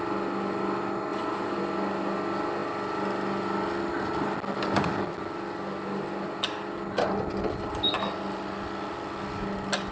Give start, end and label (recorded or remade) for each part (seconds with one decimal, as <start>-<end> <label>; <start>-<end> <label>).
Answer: 0.0-1.1 recorded; 1.1-1.6 remade; 1.6-9.9 recorded